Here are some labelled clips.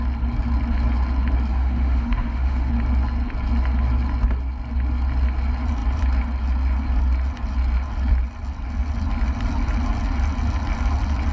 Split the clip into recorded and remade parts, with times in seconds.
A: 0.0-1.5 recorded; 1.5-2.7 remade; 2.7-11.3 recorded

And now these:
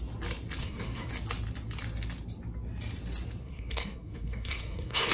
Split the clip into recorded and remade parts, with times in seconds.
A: 0.0-0.6 recorded; 0.6-1.1 remade; 1.1-3.4 recorded; 3.4-5.1 remade

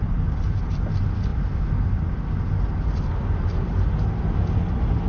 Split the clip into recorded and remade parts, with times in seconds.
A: 0.0-5.1 recorded

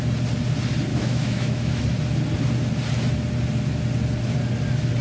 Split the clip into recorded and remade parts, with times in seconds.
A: 0.0-0.9 recorded; 0.9-1.8 remade; 1.8-5.0 recorded

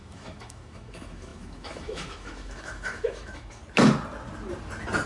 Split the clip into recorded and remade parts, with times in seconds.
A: 0.0-3.6 remade; 3.6-5.1 recorded